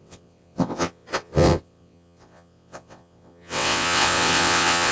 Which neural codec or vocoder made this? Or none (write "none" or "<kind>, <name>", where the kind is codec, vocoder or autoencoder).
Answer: vocoder, WaveNeXt